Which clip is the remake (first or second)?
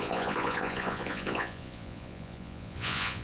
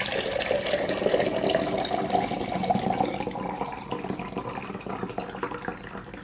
first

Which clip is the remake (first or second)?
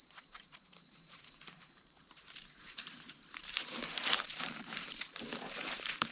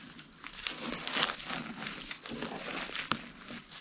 first